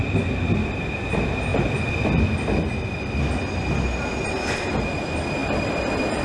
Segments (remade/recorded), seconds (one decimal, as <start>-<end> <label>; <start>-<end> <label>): 0.0-6.2 recorded